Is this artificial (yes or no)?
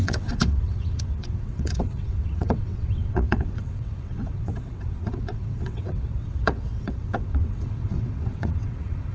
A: yes